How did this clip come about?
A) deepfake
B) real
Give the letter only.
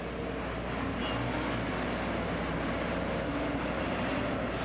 B